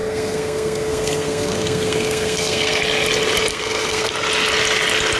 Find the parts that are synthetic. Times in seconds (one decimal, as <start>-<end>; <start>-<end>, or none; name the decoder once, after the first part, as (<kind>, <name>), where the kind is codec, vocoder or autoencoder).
0.0-2.8 (codec, SNAC); 3.5-4.1